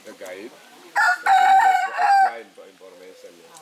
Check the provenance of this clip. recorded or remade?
recorded